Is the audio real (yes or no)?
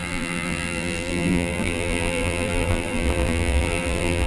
no